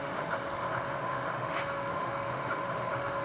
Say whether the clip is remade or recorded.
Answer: remade